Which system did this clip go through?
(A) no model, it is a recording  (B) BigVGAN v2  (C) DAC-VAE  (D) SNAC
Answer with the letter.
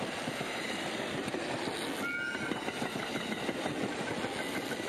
A